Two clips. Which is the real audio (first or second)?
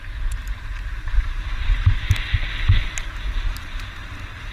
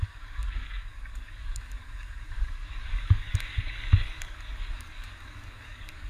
first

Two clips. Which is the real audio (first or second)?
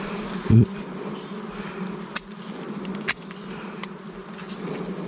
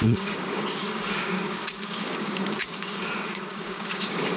first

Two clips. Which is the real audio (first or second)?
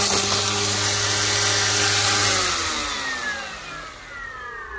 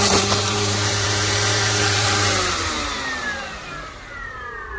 first